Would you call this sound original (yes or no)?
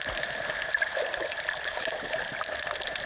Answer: yes